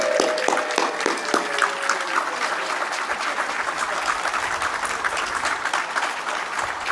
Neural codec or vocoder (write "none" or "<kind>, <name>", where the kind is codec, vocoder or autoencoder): none